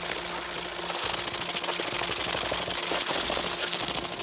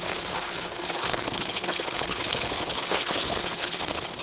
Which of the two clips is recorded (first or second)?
first